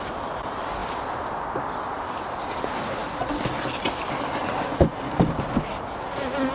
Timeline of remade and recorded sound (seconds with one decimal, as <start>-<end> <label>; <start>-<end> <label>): 0.0-6.5 recorded